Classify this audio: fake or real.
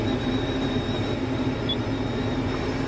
real